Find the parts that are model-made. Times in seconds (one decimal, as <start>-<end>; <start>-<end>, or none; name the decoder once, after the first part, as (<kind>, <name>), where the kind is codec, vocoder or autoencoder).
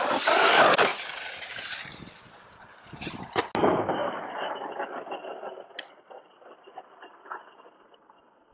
0.9-3.4 (vocoder, BigVGAN v2); 4.0-4.5